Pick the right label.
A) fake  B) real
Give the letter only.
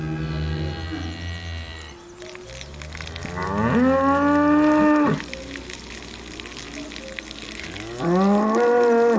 B